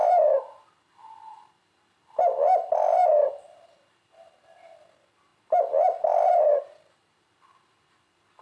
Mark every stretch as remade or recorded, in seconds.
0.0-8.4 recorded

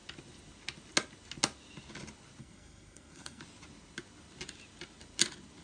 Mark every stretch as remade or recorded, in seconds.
0.0-2.4 recorded; 2.4-3.4 remade; 3.4-5.6 recorded

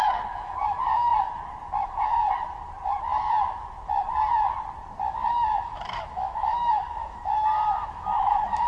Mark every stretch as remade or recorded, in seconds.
0.0-1.1 remade; 1.1-5.1 recorded; 5.1-8.7 remade

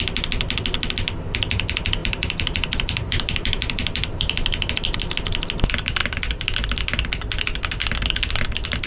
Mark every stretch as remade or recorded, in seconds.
0.0-2.0 recorded; 2.0-4.7 remade; 4.7-8.9 recorded